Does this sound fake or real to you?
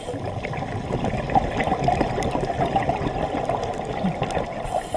real